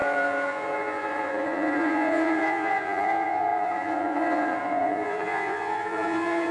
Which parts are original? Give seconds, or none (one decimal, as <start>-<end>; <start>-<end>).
none